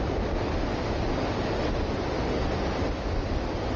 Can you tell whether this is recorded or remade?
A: recorded